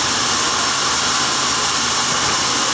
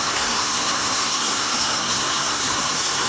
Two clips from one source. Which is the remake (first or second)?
second